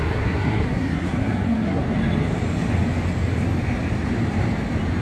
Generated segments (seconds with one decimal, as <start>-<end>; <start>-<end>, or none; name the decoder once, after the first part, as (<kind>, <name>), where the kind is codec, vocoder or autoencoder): 0.0-1.8 (codec, SNAC)